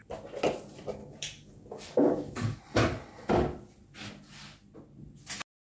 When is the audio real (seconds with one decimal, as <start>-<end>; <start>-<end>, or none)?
0.0-1.0; 2.6-5.6